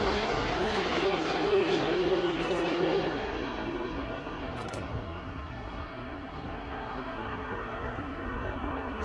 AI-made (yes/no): yes